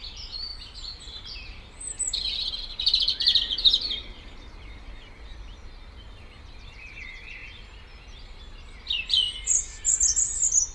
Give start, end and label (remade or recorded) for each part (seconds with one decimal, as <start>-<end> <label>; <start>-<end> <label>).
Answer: 0.0-0.5 remade; 0.5-1.0 recorded; 1.0-1.9 remade; 1.9-2.5 recorded; 2.5-5.6 remade; 5.6-6.4 recorded; 6.4-10.7 remade